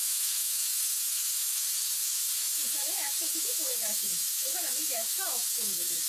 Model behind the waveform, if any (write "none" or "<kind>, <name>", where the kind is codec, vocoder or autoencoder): autoencoder, DAC-VAE